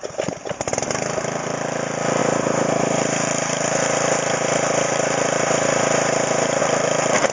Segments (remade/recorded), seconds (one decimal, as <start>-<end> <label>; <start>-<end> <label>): 0.0-2.2 recorded; 2.2-6.6 remade; 6.6-7.3 recorded